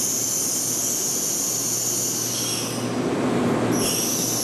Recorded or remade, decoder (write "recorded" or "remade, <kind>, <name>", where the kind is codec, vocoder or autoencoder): recorded